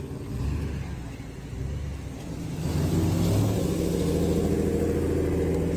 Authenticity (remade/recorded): recorded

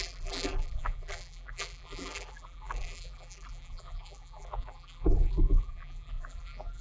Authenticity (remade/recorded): remade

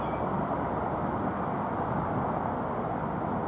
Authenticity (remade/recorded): recorded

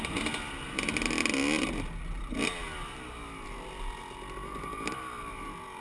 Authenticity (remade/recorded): recorded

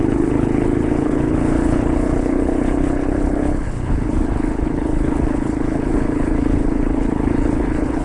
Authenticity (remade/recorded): remade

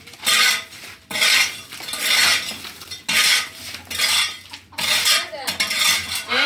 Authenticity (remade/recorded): recorded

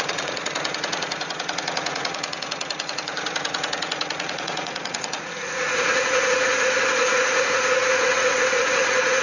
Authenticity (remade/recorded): remade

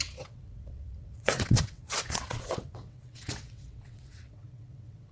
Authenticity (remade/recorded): remade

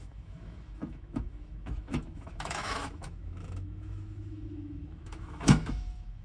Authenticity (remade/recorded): remade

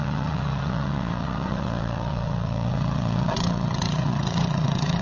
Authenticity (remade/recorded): remade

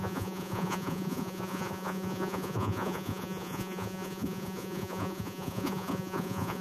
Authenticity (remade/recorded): remade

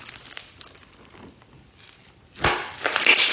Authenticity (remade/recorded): recorded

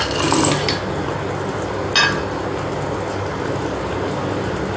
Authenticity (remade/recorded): recorded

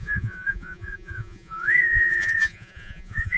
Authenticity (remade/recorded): remade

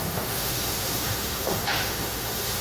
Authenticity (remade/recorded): remade